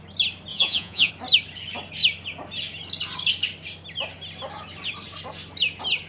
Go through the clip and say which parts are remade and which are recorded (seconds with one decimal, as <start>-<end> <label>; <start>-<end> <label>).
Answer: 0.0-0.5 recorded; 0.5-1.1 remade; 1.1-6.1 recorded